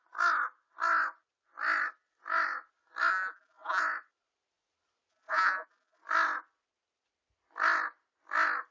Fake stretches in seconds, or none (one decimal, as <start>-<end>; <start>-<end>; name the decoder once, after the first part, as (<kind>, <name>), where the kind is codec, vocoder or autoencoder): 3.1-3.8 (vocoder, Vocos); 5.1-6.0